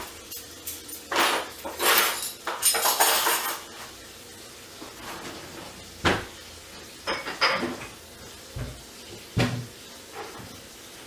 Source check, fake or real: real